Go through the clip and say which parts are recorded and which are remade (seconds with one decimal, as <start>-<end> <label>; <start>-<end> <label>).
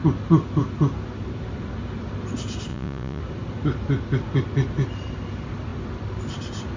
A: 0.0-2.7 recorded; 2.7-3.2 remade; 3.2-6.8 recorded